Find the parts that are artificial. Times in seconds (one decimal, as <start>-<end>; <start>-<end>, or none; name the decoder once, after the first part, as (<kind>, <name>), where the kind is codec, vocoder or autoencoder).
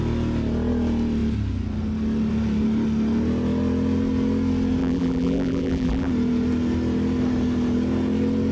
4.8-6.1 (vocoder, BigVGAN v2)